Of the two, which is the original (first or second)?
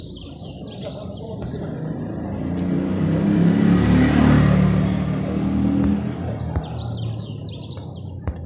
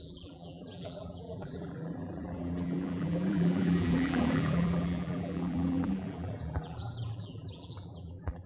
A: first